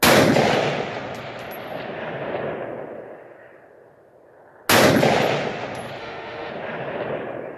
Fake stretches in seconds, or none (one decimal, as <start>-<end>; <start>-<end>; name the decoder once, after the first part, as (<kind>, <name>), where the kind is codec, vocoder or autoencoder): 6.0-6.5 (autoencoder, DAC-VAE)